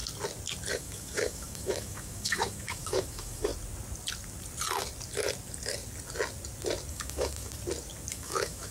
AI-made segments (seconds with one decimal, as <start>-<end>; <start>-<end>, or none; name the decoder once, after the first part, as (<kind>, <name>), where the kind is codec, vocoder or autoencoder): 0.7-3.5 (autoencoder, DAC-VAE); 6.9-7.5; 8.1-8.7